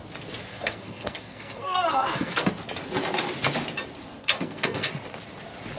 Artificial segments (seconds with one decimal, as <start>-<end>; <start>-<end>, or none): 0.5-2.5; 4.2-4.9